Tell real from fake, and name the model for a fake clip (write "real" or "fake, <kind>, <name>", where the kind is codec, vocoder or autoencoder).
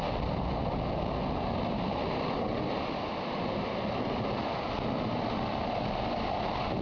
real